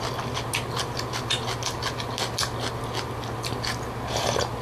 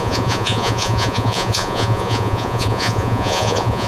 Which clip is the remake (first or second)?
second